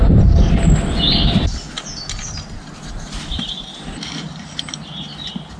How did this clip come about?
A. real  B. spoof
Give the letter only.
A